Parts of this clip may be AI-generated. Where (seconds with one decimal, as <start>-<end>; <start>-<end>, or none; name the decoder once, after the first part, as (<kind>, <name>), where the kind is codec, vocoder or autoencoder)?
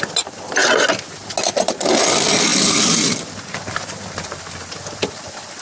none